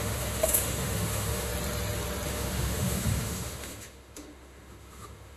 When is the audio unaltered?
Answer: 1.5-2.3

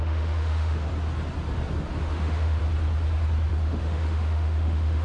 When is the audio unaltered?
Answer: 0.9-2.0; 2.6-3.5

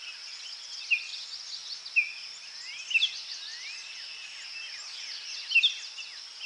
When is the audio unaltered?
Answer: 0.0-6.5